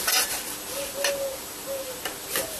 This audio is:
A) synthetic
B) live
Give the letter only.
B